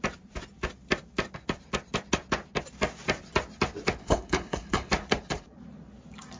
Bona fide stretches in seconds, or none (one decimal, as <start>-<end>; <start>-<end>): 0.0-4.0; 4.9-6.4